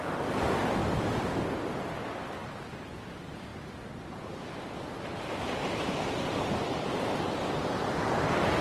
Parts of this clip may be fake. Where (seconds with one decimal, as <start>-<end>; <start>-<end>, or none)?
0.0-8.6